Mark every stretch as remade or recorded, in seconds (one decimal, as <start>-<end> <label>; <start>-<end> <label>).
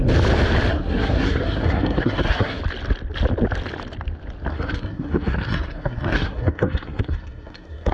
0.0-0.7 recorded; 0.7-2.6 remade; 2.6-4.5 recorded; 4.5-7.9 remade